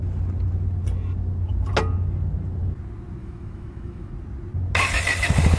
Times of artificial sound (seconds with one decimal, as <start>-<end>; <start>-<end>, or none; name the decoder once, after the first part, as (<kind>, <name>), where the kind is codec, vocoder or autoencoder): 3.2-4.1 (autoencoder, DAC-VAE)